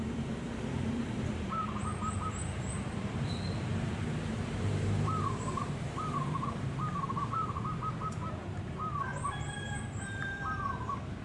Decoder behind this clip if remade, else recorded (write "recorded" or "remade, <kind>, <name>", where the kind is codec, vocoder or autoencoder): remade, vocoder, BigVGAN v2